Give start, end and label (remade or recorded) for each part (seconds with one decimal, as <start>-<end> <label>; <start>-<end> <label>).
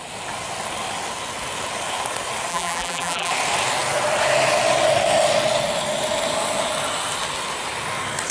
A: 0.0-2.5 recorded; 2.5-3.3 remade; 3.3-8.3 recorded